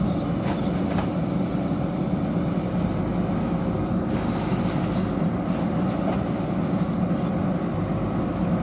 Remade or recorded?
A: recorded